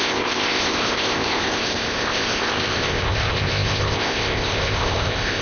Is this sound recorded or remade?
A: remade